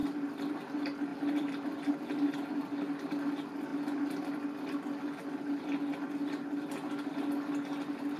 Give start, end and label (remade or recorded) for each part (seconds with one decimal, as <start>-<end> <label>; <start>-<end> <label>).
0.0-1.1 recorded; 1.1-1.9 remade; 1.9-8.2 recorded

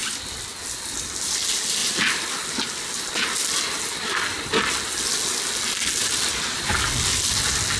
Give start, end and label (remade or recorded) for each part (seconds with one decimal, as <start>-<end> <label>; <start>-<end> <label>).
0.0-7.8 recorded

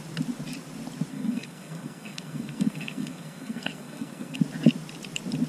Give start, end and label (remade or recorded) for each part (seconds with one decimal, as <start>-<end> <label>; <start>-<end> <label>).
0.0-1.1 recorded; 1.1-4.4 remade; 4.4-5.5 recorded

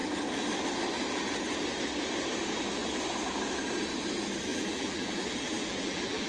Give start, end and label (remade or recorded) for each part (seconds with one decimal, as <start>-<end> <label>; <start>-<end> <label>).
0.0-4.5 recorded; 4.5-6.3 remade